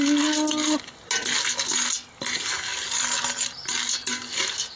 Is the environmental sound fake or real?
real